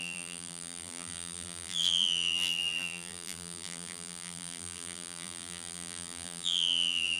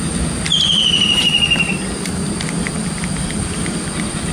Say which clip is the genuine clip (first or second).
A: second